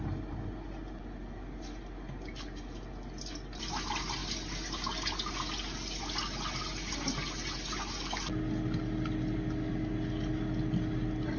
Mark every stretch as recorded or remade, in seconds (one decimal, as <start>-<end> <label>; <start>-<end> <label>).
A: 0.0-11.4 recorded